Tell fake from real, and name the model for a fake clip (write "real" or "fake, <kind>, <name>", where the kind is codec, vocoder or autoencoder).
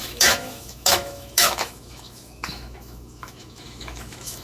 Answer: fake, autoencoder, DAC-VAE